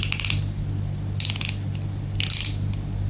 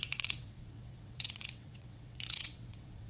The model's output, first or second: second